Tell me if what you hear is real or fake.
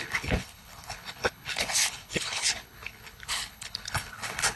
fake